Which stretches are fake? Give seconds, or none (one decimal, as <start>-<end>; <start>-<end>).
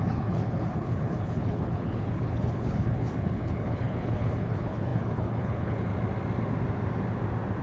0.0-5.9